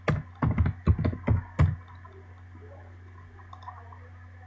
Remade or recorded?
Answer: recorded